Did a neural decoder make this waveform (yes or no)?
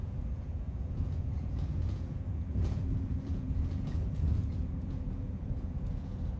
yes